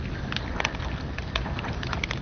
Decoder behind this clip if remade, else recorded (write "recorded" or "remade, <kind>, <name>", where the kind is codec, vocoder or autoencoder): recorded